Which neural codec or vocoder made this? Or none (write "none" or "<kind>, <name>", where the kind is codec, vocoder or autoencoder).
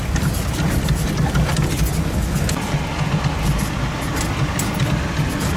none